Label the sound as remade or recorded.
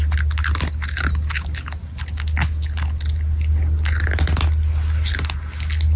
recorded